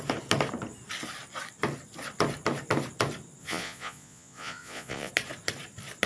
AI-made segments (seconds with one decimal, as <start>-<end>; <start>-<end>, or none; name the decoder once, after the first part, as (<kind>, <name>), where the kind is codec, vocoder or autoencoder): 3.4-5.1 (vocoder, Vocos)